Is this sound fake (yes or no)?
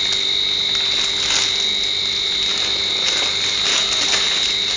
no